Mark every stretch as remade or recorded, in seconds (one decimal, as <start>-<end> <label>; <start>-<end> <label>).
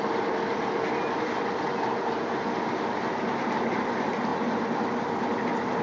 0.0-5.8 recorded